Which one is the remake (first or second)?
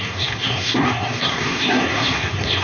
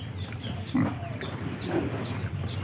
first